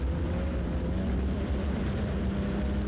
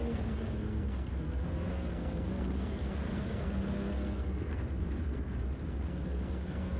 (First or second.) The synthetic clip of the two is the second